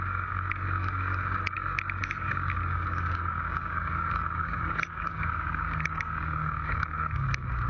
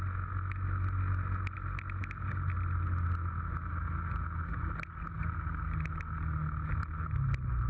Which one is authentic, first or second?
second